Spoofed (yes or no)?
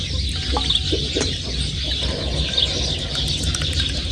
no